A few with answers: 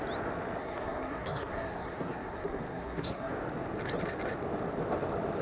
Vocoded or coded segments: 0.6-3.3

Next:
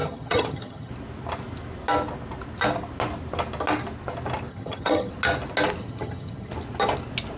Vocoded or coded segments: 0.0-0.9; 4.5-5.1; 5.8-6.5

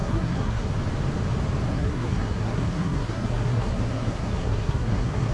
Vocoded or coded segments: 0.0-0.7; 1.7-5.3

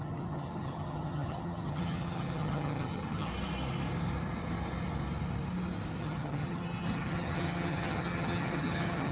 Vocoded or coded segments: 0.0-3.3; 6.0-9.1

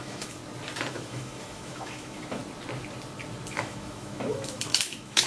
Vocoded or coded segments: 0.0-0.4; 0.9-2.4; 3.6-5.3

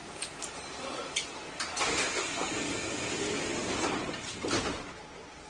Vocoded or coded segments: 0.0-1.6; 3.6-5.5

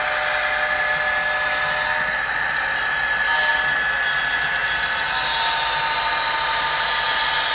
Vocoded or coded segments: 4.6-5.1